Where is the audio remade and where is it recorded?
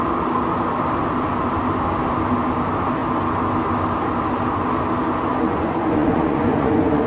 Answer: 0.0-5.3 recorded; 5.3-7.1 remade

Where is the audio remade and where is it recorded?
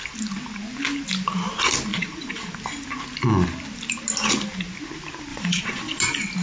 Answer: 0.0-1.9 recorded; 1.9-2.6 remade; 2.6-5.3 recorded; 5.3-6.0 remade; 6.0-6.4 recorded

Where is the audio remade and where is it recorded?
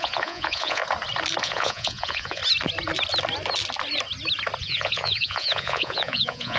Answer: 0.0-0.8 remade; 0.8-1.4 recorded; 1.4-2.4 remade; 2.4-4.6 recorded; 4.6-6.6 remade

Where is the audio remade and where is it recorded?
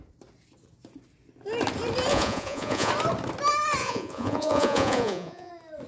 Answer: 0.0-2.1 recorded; 2.1-2.9 remade; 2.9-3.8 recorded; 3.8-5.5 remade; 5.5-5.9 recorded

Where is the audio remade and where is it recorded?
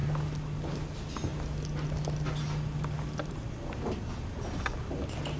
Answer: 0.0-5.4 recorded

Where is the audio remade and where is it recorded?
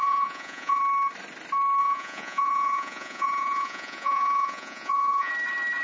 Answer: 0.0-0.8 remade; 0.8-1.8 recorded; 1.8-5.3 remade; 5.3-5.8 recorded